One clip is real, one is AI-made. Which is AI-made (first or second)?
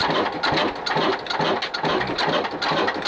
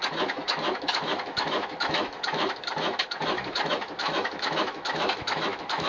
second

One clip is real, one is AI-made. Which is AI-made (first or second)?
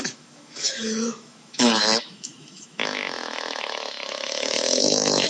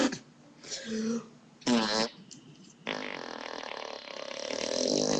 first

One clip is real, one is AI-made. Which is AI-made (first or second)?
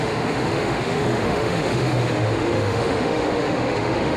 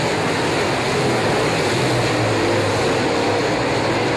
first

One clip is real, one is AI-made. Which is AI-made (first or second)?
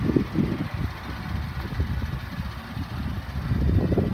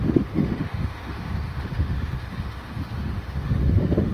second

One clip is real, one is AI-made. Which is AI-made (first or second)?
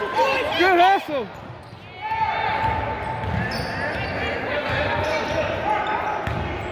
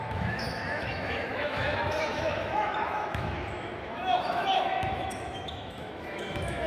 second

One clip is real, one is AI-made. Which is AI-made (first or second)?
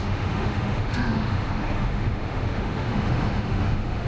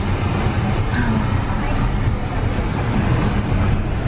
first